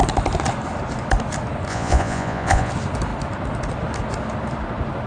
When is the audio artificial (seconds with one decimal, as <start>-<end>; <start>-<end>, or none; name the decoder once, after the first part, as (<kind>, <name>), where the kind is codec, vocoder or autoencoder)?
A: 1.7-2.7 (vocoder, Vocos)